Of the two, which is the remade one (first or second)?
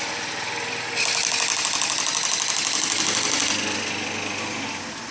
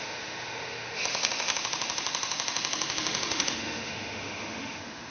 second